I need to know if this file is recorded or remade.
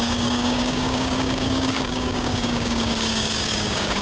remade